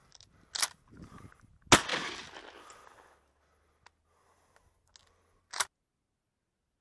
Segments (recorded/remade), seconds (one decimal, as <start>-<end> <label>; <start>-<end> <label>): 0.0-6.8 recorded